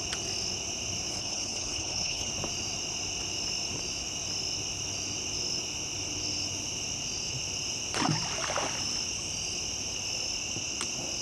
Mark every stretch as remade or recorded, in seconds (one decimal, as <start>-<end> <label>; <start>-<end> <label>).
0.0-1.1 recorded; 1.1-2.3 remade; 2.3-11.2 recorded